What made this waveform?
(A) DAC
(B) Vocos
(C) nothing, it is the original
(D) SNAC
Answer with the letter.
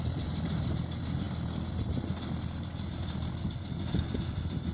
C